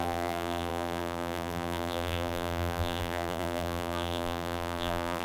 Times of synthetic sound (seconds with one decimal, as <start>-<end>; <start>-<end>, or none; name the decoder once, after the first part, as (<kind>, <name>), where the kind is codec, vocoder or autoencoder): 0.0-5.2 (vocoder, BigVGAN v2)